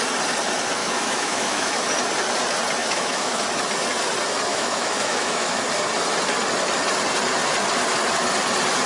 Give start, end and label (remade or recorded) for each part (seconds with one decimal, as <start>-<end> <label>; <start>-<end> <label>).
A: 0.0-0.8 recorded; 0.8-1.8 remade; 1.8-2.8 recorded; 2.8-3.4 remade; 3.4-4.5 recorded; 4.5-5.6 remade; 5.6-8.9 recorded